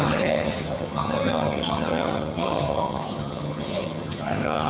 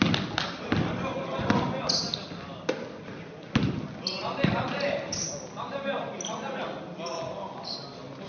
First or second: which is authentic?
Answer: second